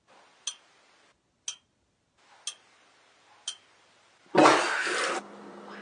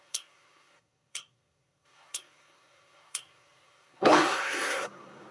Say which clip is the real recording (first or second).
first